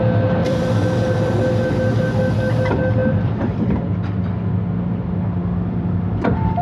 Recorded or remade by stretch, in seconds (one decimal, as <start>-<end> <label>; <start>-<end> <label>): 0.0-0.4 recorded; 0.4-1.3 remade; 1.3-3.0 recorded; 3.0-4.2 remade; 4.2-5.4 recorded; 5.4-6.6 remade